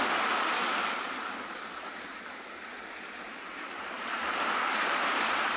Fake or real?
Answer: real